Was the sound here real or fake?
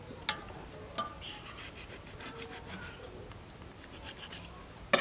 real